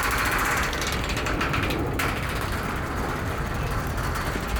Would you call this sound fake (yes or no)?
no